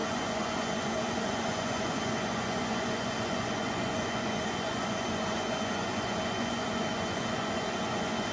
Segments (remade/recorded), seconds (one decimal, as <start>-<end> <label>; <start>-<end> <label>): 0.0-8.3 remade